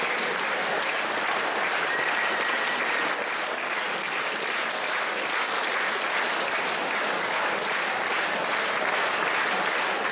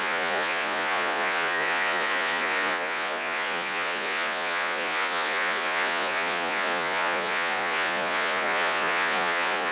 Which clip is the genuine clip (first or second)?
first